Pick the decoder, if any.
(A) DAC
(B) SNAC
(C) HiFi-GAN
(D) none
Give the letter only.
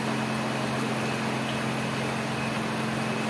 D